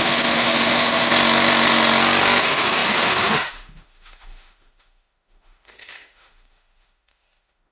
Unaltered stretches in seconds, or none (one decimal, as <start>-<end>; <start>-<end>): 1.1-2.4